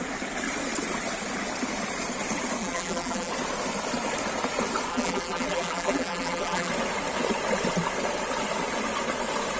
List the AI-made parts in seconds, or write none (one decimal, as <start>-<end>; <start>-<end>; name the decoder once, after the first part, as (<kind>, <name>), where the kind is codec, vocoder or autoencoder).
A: 2.6-3.3 (vocoder, BigVGAN v2); 4.9-6.7